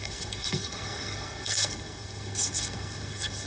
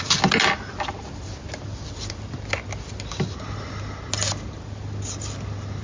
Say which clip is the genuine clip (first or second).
second